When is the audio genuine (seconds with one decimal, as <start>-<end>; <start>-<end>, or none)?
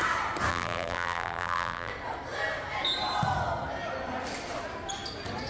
0.0-0.5; 1.9-5.5